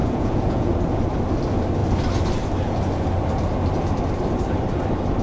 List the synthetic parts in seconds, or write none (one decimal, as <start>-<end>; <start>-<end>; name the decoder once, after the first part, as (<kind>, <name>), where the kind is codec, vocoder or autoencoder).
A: 0.0-0.7 (vocoder, Vocos)